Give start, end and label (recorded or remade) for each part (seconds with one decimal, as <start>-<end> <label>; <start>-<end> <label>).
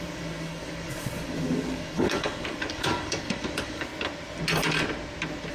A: 0.0-3.9 remade; 3.9-5.5 recorded